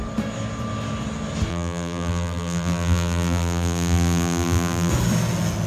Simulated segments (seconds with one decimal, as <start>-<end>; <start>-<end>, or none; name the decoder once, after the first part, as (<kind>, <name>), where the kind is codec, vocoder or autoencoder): 1.5-4.9 (vocoder, BigVGAN v2)